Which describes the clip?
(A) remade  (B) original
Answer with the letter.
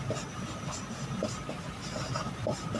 B